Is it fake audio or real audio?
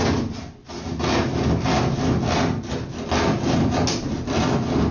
real